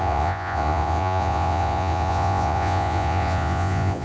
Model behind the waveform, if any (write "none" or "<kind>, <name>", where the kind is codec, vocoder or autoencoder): vocoder, Vocos